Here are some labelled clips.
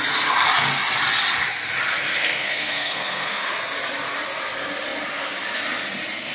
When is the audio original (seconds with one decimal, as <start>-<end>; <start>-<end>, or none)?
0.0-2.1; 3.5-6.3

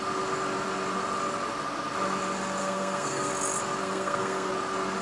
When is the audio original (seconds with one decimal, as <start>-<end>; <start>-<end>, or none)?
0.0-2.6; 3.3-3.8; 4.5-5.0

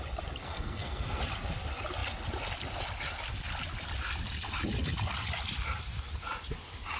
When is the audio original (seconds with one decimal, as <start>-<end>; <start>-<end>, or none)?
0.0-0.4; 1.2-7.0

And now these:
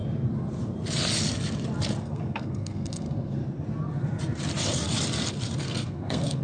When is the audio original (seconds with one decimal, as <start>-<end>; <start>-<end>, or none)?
0.0-2.0; 3.4-5.6